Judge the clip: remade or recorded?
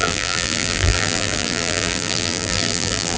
remade